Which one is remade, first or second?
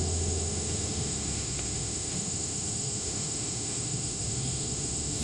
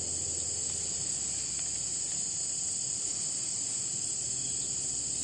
first